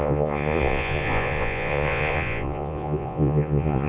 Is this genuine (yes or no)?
no